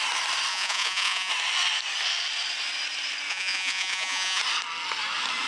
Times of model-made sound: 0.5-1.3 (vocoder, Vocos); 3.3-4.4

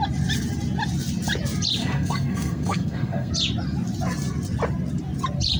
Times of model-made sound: 1.8-3.3 (codec, SNAC)